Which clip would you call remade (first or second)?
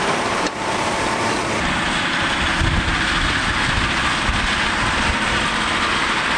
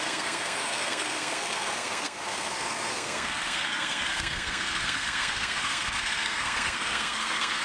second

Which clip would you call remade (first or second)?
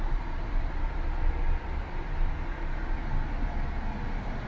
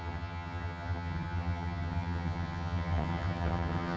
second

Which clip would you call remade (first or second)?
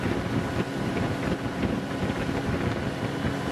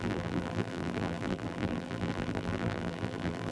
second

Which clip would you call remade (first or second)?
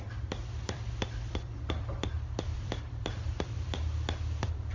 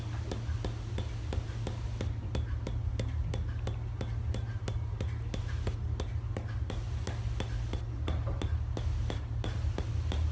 first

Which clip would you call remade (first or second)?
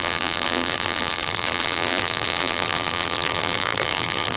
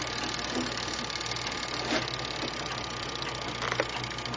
first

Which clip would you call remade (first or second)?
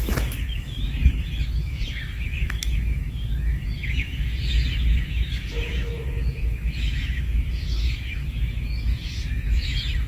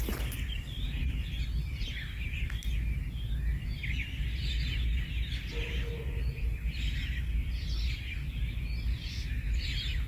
first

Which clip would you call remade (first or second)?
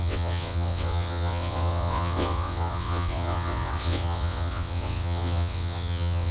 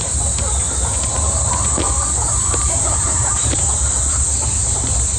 first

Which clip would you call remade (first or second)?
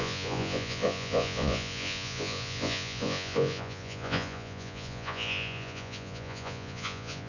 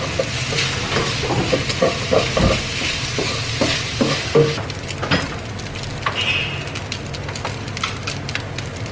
first